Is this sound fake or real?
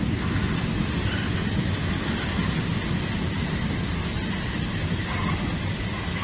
real